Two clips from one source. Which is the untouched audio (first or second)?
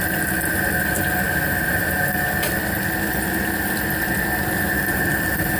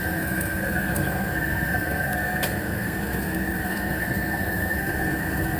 first